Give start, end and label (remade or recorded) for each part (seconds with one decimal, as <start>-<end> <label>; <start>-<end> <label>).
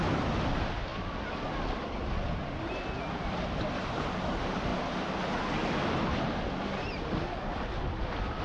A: 0.0-8.4 recorded